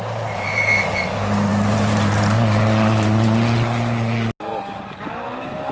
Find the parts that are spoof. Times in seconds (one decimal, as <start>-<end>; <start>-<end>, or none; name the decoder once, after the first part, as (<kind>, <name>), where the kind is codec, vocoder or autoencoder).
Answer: none